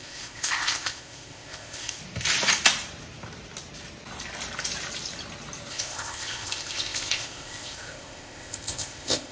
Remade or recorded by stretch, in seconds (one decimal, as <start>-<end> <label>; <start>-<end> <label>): 0.0-2.0 remade; 2.0-5.7 recorded; 5.7-9.3 remade